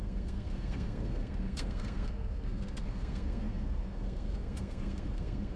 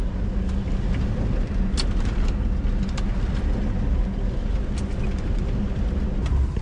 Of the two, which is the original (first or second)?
second